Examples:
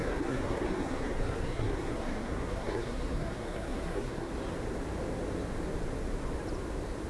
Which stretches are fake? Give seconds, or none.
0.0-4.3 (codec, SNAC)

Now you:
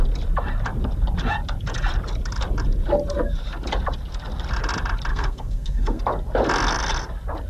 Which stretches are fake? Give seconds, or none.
5.1-6.0 (codec, SNAC)

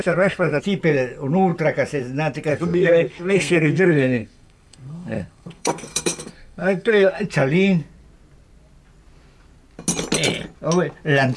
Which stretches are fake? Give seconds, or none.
0.0-0.6 (codec, SNAC); 2.5-7.2

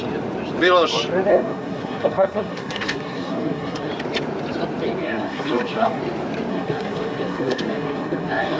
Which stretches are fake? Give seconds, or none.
1.3-3.9 (codec, SNAC); 5.0-6.0; 6.5-8.6